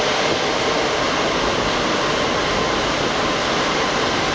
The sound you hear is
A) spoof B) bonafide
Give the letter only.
B